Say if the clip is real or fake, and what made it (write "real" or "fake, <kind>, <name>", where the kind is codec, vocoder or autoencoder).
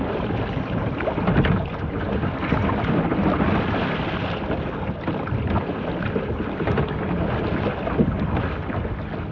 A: real